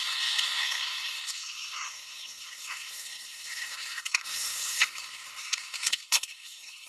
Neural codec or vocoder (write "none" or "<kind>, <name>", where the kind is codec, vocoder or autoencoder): codec, SNAC